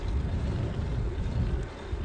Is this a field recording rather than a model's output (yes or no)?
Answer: yes